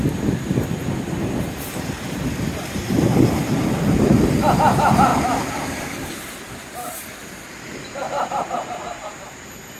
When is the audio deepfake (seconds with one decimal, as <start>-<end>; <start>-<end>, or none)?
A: 5.1-7.7